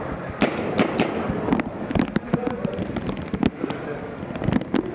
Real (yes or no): yes